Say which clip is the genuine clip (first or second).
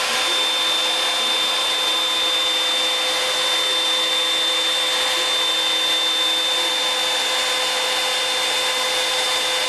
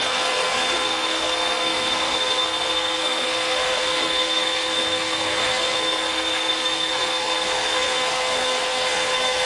first